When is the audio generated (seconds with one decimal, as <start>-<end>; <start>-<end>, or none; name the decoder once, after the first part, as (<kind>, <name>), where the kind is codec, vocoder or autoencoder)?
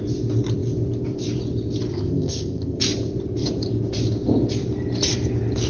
1.9-2.8 (codec, ZipCodec)